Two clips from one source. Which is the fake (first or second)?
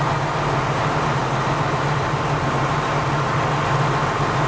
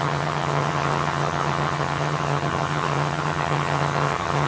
second